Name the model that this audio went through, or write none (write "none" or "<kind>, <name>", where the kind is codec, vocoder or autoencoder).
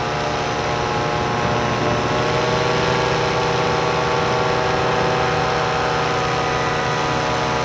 none